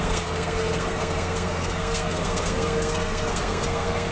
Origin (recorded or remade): remade